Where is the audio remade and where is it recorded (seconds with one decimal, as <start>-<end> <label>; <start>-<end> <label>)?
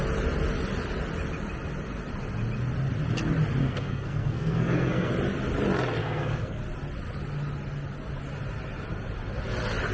0.0-3.6 recorded; 3.6-5.1 remade; 5.1-6.0 recorded; 6.0-6.6 remade; 6.6-9.9 recorded